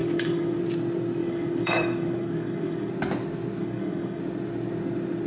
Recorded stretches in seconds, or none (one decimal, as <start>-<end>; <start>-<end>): 0.6-1.2; 2.9-3.6; 4.2-5.3